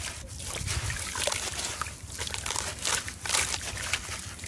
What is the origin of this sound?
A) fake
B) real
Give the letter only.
B